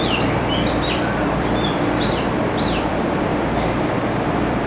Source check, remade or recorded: remade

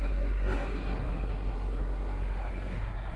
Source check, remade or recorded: remade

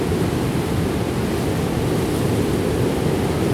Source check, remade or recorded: recorded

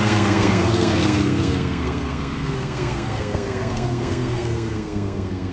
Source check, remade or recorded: remade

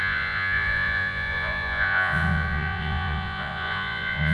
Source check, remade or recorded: remade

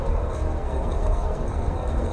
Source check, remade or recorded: remade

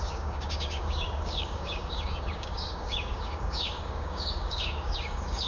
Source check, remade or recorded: remade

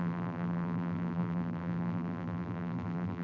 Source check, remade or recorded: remade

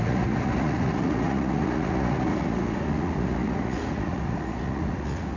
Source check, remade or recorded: remade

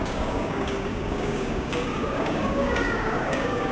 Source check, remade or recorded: remade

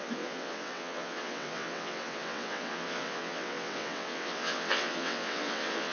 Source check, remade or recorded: remade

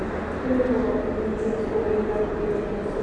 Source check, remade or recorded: recorded